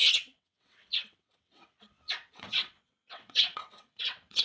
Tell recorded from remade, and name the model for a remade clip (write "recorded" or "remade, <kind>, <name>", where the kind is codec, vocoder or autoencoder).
remade, vocoder, WaveNeXt